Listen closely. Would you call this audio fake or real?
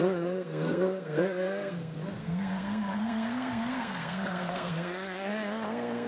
fake